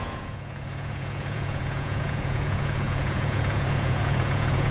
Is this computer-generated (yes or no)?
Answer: yes